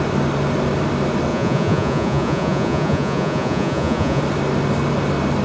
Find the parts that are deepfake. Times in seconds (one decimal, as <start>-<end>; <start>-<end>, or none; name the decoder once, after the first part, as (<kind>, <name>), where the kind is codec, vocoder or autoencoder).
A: 1.3-4.2 (vocoder, Vocos)